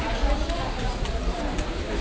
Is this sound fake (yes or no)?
no